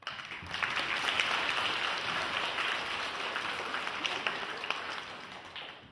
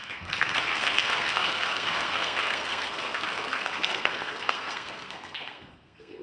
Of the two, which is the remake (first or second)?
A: second